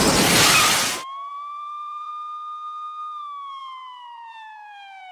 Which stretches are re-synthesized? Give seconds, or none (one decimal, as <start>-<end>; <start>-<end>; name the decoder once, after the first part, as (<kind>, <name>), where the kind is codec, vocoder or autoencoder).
1.3-2.1 (vocoder, BigVGAN v2); 3.6-5.1